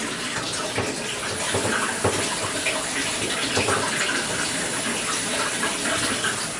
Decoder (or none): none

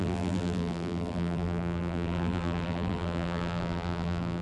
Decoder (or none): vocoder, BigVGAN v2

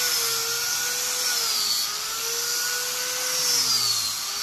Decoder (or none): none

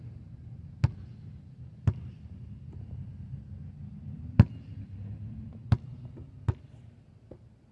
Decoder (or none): none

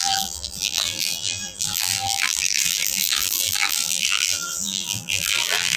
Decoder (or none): vocoder, BigVGAN v2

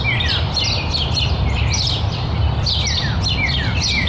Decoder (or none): none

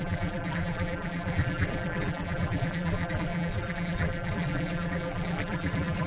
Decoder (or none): vocoder, BigVGAN v2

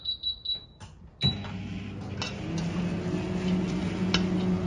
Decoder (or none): none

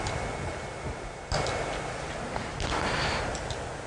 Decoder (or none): none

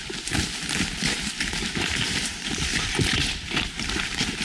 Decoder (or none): vocoder, BigVGAN v2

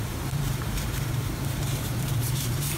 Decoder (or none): vocoder, BigVGAN v2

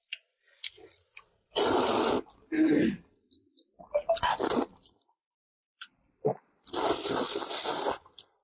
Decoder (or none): vocoder, BigVGAN v2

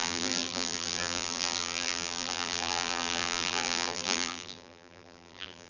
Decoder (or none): vocoder, BigVGAN v2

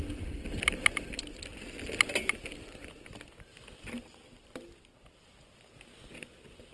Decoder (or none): none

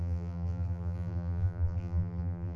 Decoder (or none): vocoder, BigVGAN v2